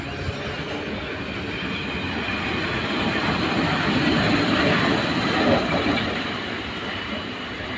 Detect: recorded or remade recorded